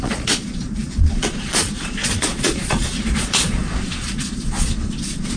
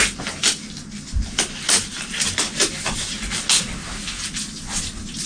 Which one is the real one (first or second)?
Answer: second